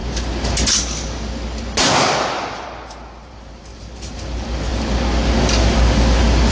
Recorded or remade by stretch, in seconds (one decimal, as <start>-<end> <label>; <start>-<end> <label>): 0.0-2.5 recorded; 2.5-4.7 remade; 4.7-6.5 recorded